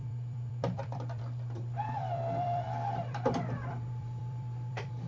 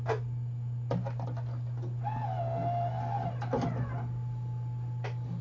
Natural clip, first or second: second